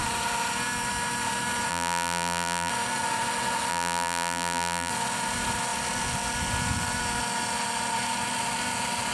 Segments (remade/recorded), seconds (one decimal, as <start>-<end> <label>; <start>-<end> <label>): 0.0-1.7 recorded; 1.7-2.7 remade; 2.7-3.7 recorded; 3.7-4.9 remade; 4.9-9.1 recorded

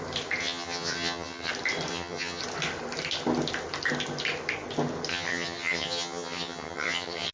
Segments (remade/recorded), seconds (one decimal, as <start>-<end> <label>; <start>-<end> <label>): 0.0-0.4 recorded; 0.4-1.5 remade; 1.5-1.9 recorded; 1.9-2.4 remade; 2.4-5.1 recorded; 5.1-7.3 remade